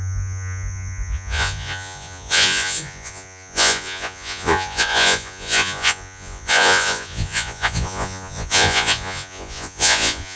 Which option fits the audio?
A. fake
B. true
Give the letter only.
A